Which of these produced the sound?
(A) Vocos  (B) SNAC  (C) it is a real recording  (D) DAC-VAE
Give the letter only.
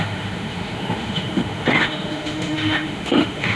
D